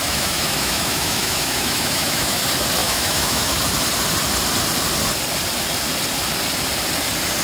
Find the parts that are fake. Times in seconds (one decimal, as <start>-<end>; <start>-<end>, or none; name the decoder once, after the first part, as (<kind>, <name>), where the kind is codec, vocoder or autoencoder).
0.0-2.4 (autoencoder, DAC-VAE); 2.8-3.6